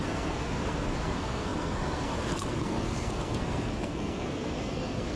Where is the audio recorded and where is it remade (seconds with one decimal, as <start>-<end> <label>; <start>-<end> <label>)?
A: 0.0-5.2 remade